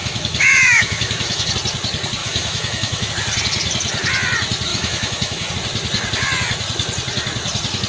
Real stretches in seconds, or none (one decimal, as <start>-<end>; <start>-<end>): 1.5-2.2; 3.1-4.7; 5.5-7.9